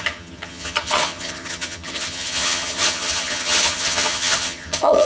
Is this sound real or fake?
fake